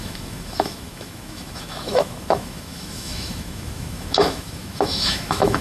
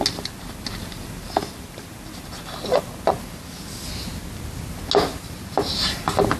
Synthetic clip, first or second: first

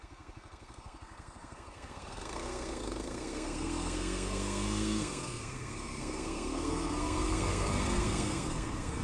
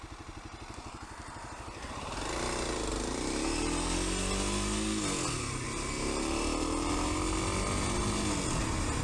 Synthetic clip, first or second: first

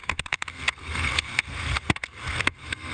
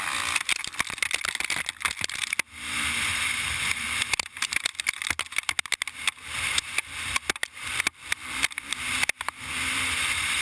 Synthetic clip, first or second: first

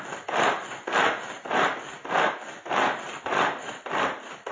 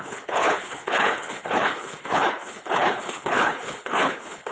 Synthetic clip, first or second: second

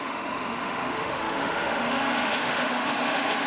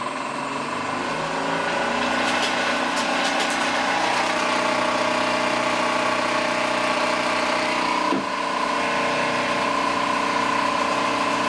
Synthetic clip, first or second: first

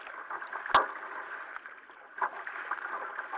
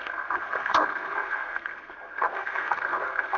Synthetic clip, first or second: second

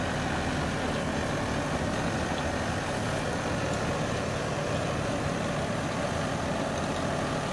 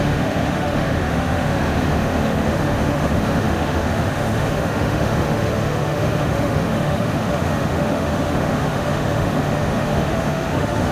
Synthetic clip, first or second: second